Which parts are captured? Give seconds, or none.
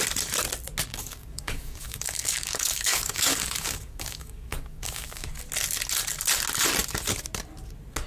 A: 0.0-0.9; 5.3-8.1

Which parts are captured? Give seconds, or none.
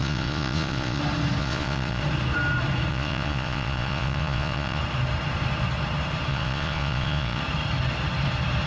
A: 1.0-1.4; 2.0-2.9; 4.8-6.3; 7.4-8.7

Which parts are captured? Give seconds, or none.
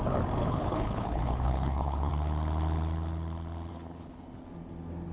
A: 0.0-0.4; 2.1-3.7; 4.4-5.1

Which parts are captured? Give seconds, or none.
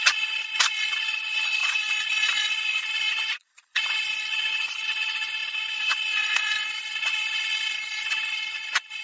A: none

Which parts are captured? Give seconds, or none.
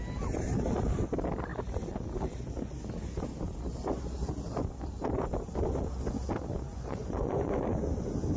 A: 0.0-6.7; 7.5-8.4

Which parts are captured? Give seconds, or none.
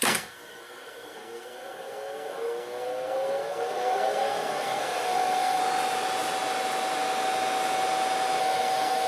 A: 5.6-8.4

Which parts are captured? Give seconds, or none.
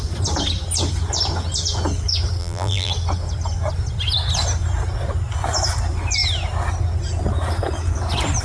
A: 0.0-2.4; 2.9-8.4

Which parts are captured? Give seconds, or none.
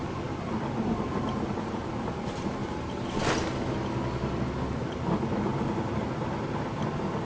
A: 0.0-2.6; 3.2-7.2